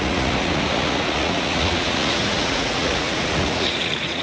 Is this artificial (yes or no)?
yes